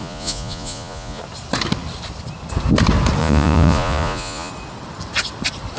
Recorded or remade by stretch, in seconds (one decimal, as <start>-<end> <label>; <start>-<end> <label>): 0.0-1.2 remade; 1.2-3.2 recorded; 3.2-4.5 remade; 4.5-5.8 recorded